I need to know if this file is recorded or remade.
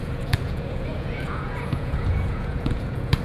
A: remade